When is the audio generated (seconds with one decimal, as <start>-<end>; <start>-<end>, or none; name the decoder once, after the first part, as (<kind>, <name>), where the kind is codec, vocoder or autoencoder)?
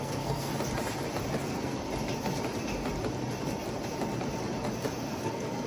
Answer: 0.0-0.5 (codec, SNAC); 1.4-1.8; 5.2-5.7